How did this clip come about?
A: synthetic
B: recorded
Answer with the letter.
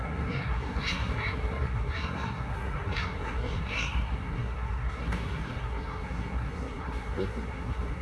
A